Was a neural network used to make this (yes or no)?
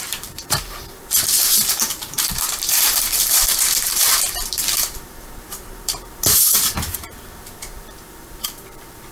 yes